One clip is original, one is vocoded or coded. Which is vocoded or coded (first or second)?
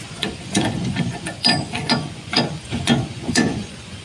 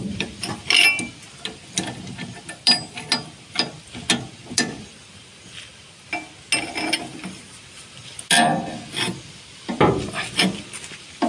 first